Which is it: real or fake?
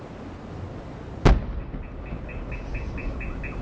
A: real